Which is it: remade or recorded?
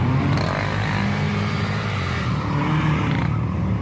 recorded